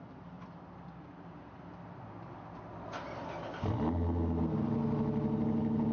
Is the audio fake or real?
real